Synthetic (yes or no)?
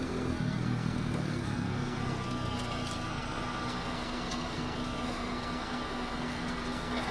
yes